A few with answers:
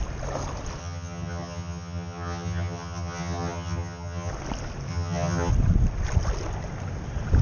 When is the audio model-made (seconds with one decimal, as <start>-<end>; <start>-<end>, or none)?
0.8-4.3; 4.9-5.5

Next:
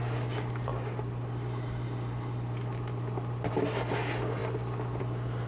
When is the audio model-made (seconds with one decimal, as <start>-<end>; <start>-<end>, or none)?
none

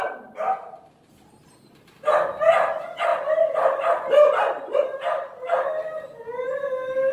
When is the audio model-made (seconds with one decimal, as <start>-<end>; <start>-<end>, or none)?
none

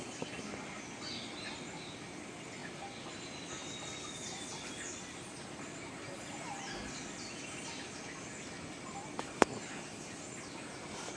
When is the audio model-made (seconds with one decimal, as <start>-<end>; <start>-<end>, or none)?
none

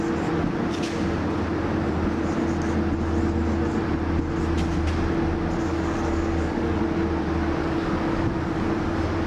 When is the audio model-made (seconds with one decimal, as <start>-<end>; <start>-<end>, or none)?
5.7-6.8; 7.6-8.6

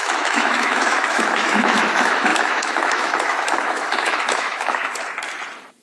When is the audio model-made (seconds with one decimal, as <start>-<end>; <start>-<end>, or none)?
0.0-4.9